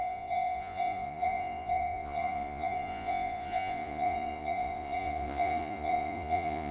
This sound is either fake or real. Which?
fake